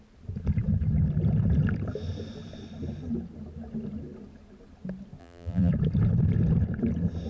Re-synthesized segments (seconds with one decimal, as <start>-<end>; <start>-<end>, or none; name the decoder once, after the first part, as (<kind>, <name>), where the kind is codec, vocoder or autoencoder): 5.2-5.7 (vocoder, BigVGAN v2)